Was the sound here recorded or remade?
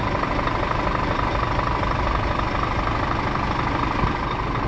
recorded